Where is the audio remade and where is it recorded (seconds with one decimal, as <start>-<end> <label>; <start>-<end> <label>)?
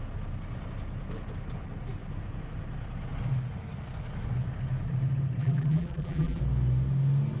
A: 0.0-5.4 recorded; 5.4-6.4 remade; 6.4-7.4 recorded